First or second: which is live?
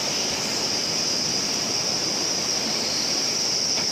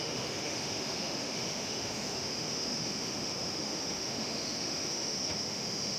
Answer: first